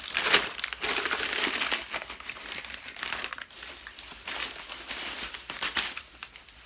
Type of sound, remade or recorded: remade